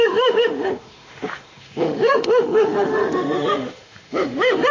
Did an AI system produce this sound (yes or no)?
yes